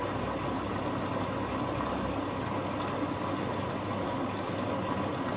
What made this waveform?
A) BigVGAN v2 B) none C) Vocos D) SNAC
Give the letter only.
B